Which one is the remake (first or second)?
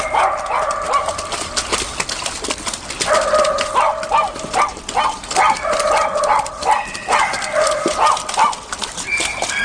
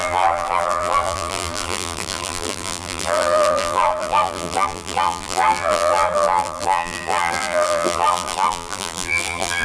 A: second